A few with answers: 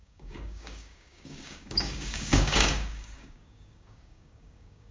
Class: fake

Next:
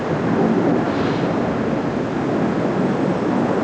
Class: real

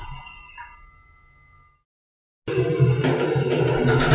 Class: real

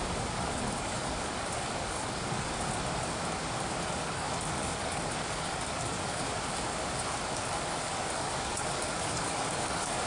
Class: fake